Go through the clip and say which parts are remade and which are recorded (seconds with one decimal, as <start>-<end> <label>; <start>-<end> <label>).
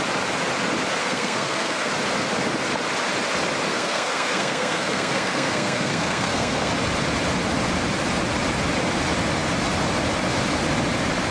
0.0-1.0 recorded; 1.0-1.9 remade; 1.9-3.7 recorded; 3.7-6.7 remade; 6.7-11.3 recorded